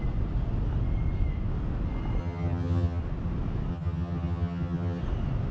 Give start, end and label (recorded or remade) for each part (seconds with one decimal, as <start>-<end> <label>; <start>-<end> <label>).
0.0-2.2 recorded; 2.2-3.0 remade; 3.0-3.7 recorded; 3.7-5.0 remade; 5.0-5.5 recorded